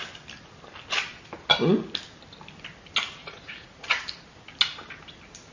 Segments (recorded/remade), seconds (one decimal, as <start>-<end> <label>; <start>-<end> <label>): 0.0-3.2 recorded; 3.2-4.0 remade; 4.0-5.5 recorded